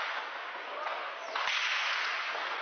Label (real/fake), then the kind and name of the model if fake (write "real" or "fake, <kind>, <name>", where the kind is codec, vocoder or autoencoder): fake, vocoder, Vocos